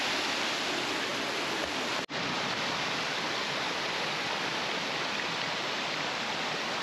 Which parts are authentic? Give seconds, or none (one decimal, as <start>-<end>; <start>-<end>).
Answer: 0.0-6.8